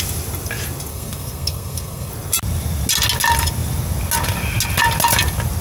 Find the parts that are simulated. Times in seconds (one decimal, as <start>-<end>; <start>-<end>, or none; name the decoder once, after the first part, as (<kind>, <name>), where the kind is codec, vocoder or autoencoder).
0.9-2.1 (codec, SNAC)